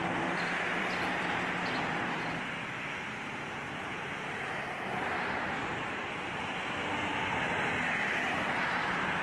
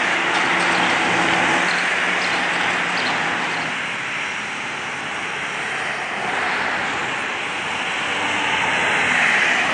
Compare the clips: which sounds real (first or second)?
second